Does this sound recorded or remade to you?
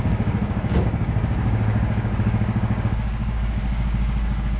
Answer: remade